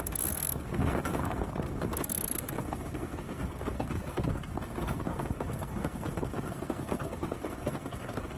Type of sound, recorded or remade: remade